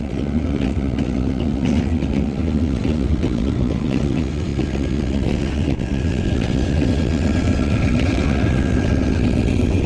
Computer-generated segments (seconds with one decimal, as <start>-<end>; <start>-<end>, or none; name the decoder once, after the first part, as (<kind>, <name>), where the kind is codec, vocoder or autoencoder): 0.0-9.9 (vocoder, WaveNeXt)